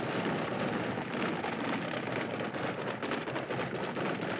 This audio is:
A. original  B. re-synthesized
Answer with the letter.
A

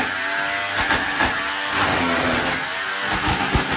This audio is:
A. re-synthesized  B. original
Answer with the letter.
B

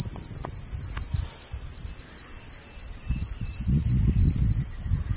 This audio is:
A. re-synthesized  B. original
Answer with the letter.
B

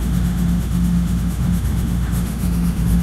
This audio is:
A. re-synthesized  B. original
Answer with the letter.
A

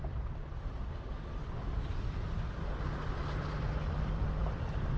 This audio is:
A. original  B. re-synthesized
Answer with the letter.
B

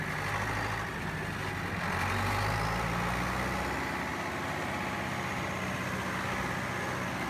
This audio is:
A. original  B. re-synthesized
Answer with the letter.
A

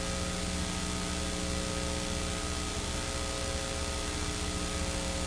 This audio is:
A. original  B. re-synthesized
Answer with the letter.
A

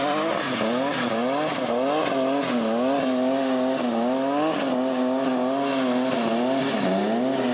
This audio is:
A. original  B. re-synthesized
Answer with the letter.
A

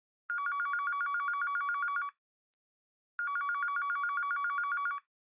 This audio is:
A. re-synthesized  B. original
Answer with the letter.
B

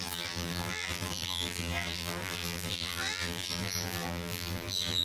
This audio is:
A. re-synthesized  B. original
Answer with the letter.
A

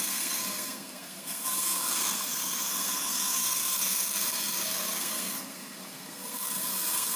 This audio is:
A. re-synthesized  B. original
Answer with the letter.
A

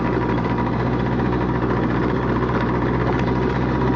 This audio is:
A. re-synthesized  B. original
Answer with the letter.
B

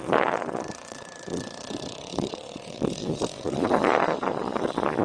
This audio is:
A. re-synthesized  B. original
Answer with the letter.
A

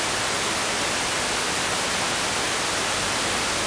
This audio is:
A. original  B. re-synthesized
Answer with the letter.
A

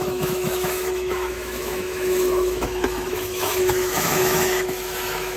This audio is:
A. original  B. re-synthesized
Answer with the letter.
B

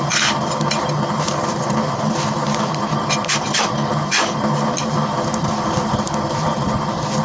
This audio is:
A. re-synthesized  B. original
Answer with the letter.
A